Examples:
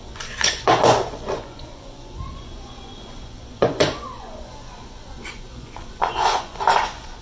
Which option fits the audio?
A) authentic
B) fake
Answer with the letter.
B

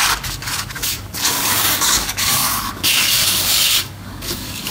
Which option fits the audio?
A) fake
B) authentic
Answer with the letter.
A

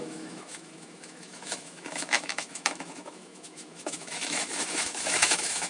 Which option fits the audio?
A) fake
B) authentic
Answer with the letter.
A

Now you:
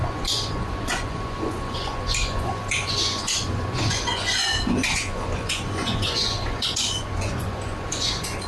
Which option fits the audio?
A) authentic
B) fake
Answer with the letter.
B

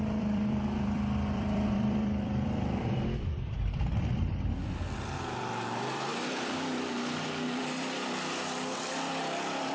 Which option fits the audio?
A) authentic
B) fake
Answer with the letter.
B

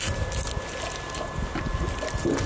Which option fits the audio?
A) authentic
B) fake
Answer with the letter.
A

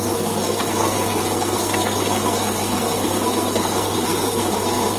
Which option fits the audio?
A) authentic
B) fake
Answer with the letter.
B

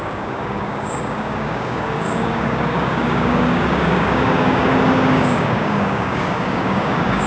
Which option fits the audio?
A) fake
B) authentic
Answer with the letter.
A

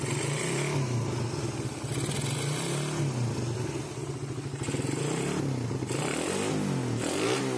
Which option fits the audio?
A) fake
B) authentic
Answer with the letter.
B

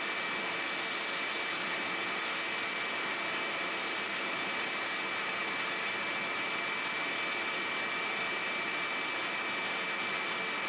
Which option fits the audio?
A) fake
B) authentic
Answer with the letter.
B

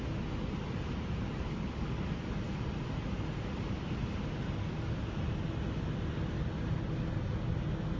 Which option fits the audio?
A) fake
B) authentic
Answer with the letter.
B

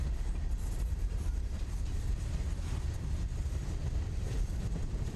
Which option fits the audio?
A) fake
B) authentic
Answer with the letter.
A